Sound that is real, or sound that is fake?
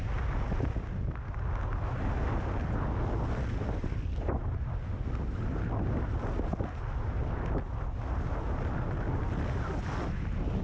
real